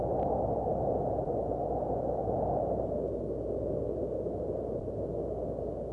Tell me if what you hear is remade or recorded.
recorded